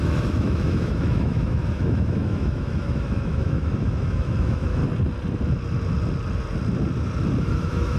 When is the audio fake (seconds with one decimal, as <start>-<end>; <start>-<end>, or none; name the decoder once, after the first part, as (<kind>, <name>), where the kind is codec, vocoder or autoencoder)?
0.0-4.8 (autoencoder, DAC-VAE); 7.4-8.0